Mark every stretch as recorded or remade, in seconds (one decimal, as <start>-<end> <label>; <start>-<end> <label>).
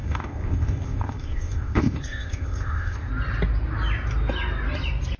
0.0-3.1 remade; 3.1-5.2 recorded